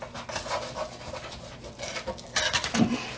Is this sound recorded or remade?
recorded